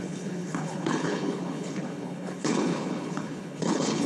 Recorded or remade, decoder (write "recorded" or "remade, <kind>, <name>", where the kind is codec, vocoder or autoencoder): remade, codec, HILCodec